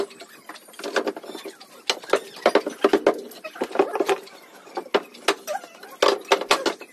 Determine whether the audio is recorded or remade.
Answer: recorded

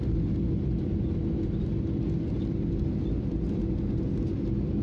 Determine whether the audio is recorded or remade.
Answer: recorded